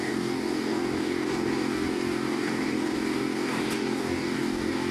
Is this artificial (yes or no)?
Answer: yes